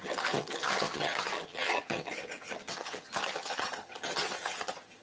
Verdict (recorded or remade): remade